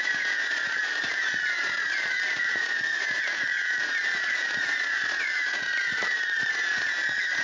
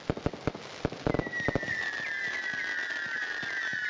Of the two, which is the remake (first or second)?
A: first